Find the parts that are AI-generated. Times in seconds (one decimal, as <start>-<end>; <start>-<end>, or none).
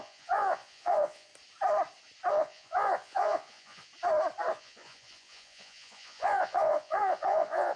0.0-1.3; 2.3-3.9; 4.5-7.8